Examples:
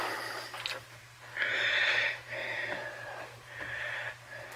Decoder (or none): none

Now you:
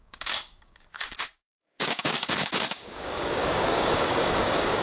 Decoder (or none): codec, DAC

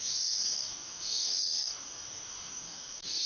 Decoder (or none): codec, DAC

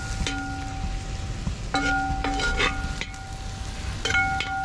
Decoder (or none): none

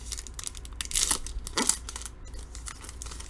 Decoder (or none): none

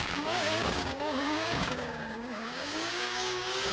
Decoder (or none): codec, DAC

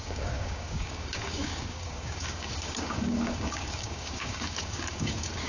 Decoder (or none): codec, DAC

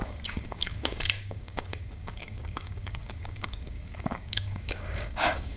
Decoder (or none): codec, DAC